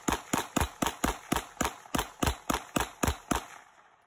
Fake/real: real